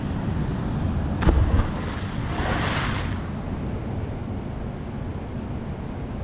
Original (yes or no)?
yes